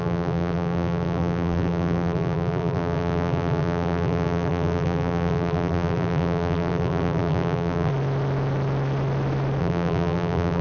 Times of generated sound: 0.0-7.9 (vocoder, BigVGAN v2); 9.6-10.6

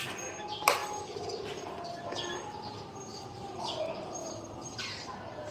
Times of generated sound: 4.2-4.8 (vocoder, BigVGAN v2)

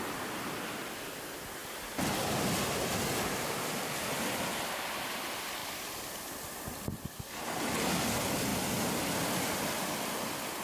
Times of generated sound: 1.6-2.1 (vocoder, BigVGAN v2); 5.6-6.8

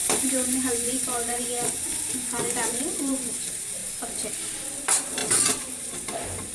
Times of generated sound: 0.0-3.8 (vocoder, BigVGAN v2); 4.8-6.5